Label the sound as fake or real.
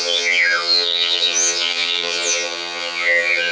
fake